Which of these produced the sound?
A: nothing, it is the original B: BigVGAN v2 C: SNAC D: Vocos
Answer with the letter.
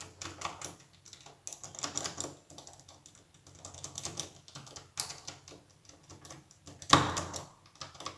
A